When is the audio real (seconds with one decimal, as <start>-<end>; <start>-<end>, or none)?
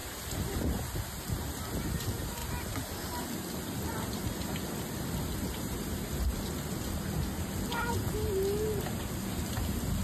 0.6-10.0